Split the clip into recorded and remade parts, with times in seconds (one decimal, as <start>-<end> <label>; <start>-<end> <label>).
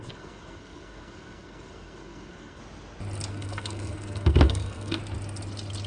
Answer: 0.0-2.6 remade; 2.6-3.3 recorded; 3.3-5.0 remade; 5.0-5.9 recorded